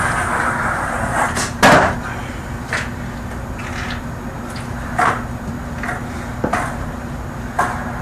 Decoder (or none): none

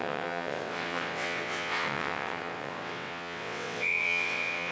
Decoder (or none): vocoder, WaveNeXt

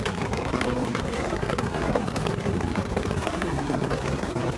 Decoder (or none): codec, SNAC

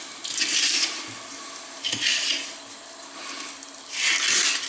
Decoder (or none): none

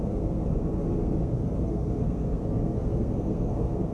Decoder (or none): codec, SNAC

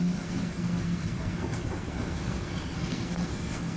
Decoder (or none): codec, SNAC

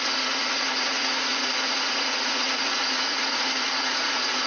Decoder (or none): vocoder, Vocos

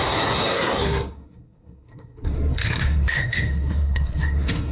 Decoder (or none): codec, SNAC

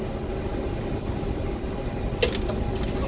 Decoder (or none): none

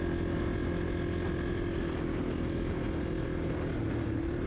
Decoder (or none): none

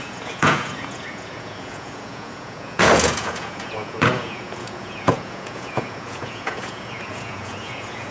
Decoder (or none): vocoder, Vocos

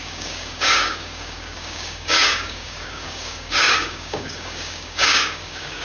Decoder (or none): codec, DAC